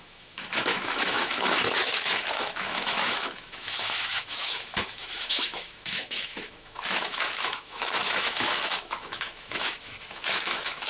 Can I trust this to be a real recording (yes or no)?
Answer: no